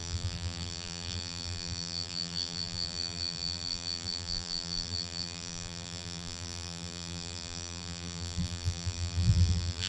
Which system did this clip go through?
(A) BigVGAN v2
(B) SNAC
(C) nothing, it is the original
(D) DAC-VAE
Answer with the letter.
A